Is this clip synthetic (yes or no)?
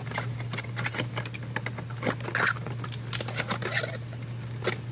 no